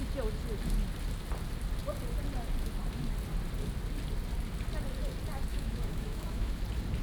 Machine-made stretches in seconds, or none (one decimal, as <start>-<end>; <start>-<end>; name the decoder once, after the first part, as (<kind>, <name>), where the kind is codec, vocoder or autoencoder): 5.5-6.6 (autoencoder, DAC-VAE)